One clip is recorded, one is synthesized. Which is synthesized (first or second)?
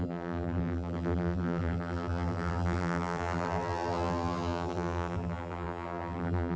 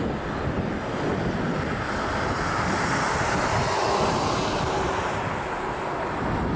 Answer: first